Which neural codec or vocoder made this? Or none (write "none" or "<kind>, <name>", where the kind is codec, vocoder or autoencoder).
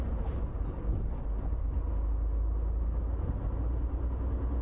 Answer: none